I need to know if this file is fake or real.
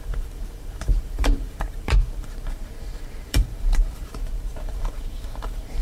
fake